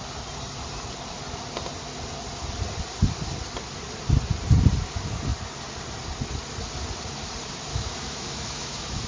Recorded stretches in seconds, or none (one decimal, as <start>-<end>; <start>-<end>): 0.0-7.7